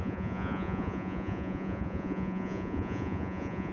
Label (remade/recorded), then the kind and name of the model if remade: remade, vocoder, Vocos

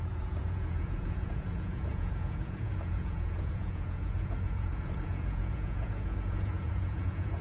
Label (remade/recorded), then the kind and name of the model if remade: remade, vocoder, Vocos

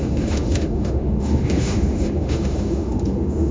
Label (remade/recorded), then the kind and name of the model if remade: remade, autoencoder, DAC-VAE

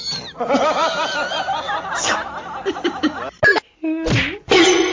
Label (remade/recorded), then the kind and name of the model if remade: recorded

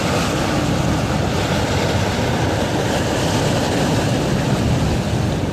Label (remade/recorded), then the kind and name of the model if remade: recorded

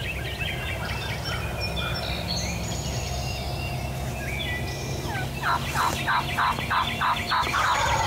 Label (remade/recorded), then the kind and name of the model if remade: recorded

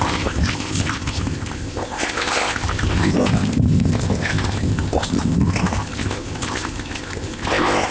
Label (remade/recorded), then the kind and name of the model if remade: remade, codec, ZipCodec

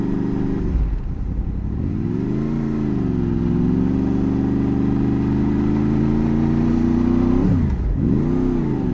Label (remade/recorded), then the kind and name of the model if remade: recorded